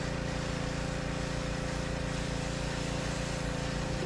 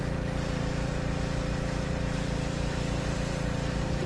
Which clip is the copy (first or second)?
second